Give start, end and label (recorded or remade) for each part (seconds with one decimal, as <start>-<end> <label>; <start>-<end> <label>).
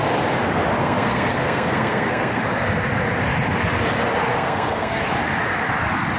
0.0-0.8 recorded; 0.8-2.4 remade; 2.4-4.3 recorded; 4.3-5.0 remade; 5.0-6.2 recorded